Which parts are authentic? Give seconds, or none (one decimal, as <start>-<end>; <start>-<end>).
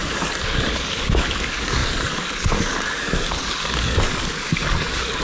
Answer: none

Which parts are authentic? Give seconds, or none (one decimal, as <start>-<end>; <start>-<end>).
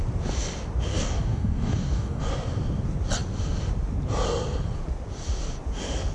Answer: 0.0-0.9; 2.2-6.1